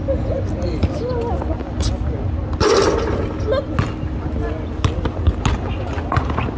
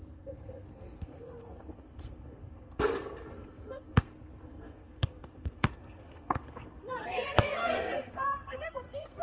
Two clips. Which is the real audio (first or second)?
first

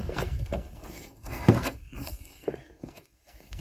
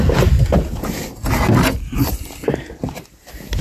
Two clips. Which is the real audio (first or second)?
second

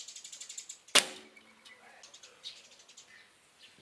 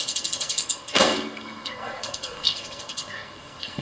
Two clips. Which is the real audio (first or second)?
first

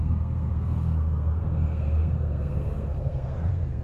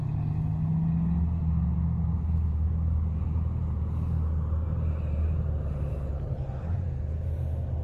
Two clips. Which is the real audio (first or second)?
second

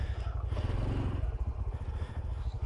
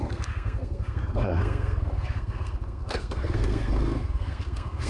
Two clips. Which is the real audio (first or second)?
first